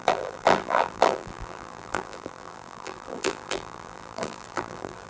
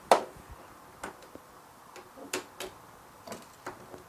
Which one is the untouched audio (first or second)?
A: second